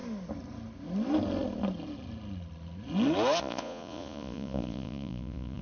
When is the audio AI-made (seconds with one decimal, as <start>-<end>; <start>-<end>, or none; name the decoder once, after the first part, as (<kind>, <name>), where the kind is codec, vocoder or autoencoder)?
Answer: 3.4-5.6 (vocoder, Vocos)

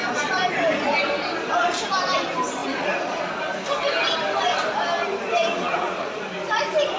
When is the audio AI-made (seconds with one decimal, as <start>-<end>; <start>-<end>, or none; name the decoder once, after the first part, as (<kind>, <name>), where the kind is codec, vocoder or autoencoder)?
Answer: 2.6-3.3 (vocoder, Vocos); 5.5-6.2

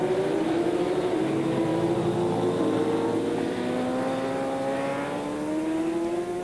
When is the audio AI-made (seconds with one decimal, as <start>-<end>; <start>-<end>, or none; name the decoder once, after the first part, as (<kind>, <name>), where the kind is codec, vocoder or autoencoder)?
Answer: none

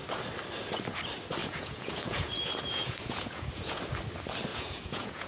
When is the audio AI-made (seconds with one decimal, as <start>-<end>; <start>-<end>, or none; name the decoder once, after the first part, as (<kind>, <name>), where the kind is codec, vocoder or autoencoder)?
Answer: 1.4-3.8 (vocoder, Vocos); 4.5-5.3

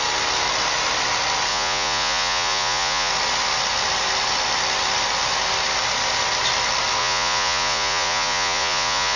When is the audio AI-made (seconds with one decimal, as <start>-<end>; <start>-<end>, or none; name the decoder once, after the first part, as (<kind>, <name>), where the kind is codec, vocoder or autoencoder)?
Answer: 1.5-3.1 (vocoder, Vocos); 7.0-9.2